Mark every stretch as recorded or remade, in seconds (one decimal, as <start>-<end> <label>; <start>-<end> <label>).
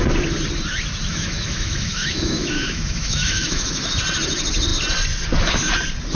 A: 0.0-1.1 recorded; 1.1-3.8 remade; 3.8-6.1 recorded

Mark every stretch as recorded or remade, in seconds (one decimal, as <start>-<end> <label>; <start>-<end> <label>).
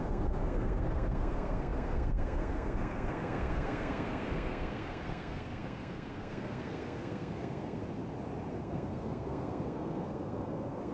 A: 0.0-7.8 remade; 7.8-8.5 recorded; 8.5-10.9 remade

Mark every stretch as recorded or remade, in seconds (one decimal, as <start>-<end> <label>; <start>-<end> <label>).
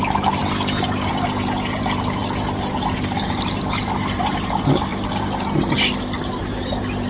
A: 0.0-0.4 remade; 0.4-1.1 recorded; 1.1-4.9 remade; 4.9-6.4 recorded; 6.4-7.1 remade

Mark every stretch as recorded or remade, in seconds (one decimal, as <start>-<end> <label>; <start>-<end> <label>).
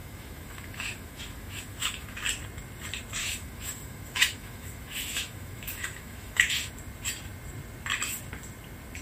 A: 0.0-2.2 remade; 2.2-3.2 recorded; 3.2-6.7 remade; 6.7-9.0 recorded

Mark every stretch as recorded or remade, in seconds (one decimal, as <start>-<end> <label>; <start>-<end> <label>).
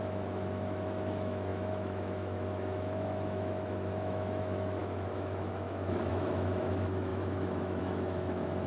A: 0.0-8.7 remade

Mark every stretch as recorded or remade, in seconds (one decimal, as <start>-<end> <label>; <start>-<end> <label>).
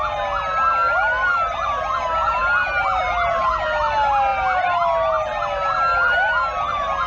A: 0.0-7.1 recorded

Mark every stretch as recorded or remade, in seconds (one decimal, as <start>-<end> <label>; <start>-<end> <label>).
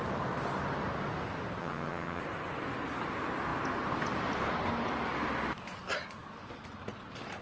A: 0.0-1.6 recorded; 1.6-2.2 remade; 2.2-7.4 recorded